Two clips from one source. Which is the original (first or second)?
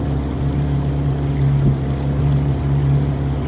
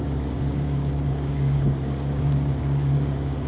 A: first